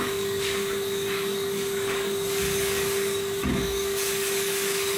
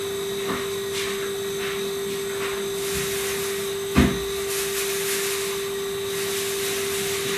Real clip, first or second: second